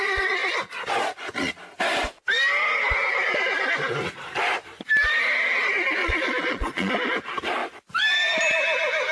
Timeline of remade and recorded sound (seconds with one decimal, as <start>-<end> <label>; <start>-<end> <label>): 0.0-6.0 recorded; 6.0-6.9 remade; 6.9-9.1 recorded